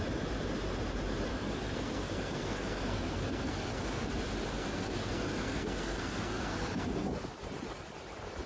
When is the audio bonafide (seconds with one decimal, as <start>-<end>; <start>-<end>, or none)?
0.0-1.3; 4.1-4.5; 7.3-8.5